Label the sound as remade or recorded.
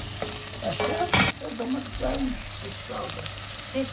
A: recorded